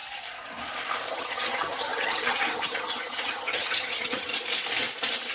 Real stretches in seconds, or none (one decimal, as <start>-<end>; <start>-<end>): 0.0-1.1; 4.3-5.3